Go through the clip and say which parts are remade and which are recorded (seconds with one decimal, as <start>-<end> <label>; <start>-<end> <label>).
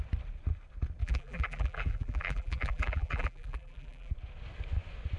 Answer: 0.0-1.0 recorded; 1.0-4.1 remade; 4.1-5.2 recorded